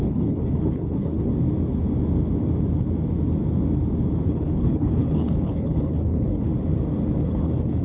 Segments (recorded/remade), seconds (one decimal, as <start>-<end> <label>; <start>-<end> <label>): 0.0-1.3 remade; 1.3-4.3 recorded; 4.3-6.5 remade; 6.5-7.2 recorded; 7.2-7.8 remade